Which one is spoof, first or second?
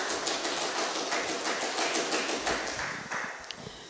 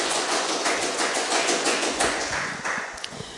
second